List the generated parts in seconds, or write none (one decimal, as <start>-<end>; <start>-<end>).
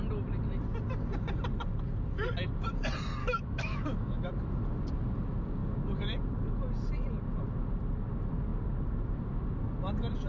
3.2-4.3